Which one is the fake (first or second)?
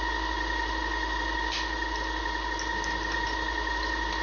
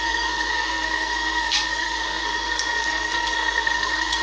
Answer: second